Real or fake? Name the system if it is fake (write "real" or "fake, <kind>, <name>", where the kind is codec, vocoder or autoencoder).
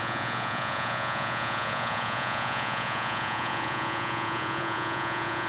fake, vocoder, Vocos